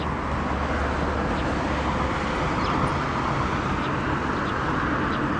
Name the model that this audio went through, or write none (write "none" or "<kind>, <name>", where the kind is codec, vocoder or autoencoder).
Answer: none